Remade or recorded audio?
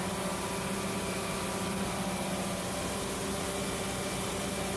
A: recorded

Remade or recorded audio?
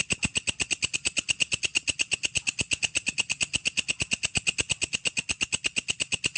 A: recorded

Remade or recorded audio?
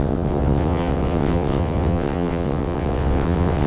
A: remade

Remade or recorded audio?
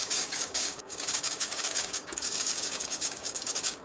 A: remade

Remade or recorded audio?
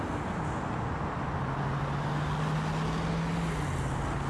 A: recorded